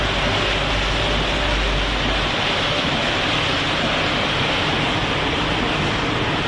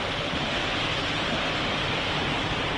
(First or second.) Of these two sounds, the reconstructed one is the second